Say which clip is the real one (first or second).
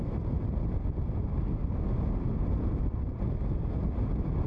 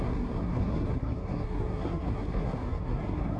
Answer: first